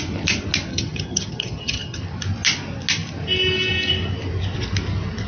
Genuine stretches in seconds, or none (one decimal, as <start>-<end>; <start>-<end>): 0.0-0.7; 2.0-5.3